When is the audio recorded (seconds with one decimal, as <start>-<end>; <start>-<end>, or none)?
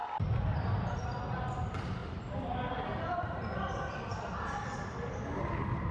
1.2-2.0; 5.5-5.9